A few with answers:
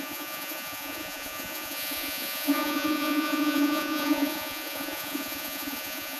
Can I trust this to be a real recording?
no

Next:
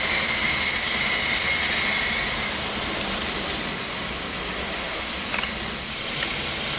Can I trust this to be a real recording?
yes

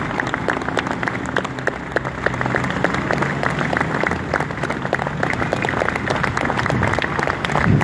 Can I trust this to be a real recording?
yes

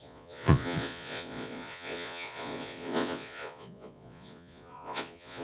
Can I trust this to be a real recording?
no